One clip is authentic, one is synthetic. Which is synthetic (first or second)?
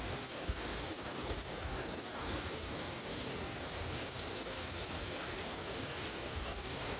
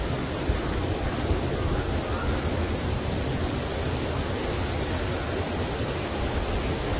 first